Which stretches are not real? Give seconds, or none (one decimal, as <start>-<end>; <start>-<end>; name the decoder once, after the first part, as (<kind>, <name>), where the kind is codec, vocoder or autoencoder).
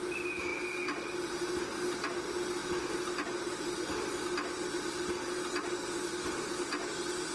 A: none